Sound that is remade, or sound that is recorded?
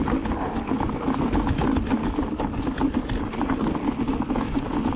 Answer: recorded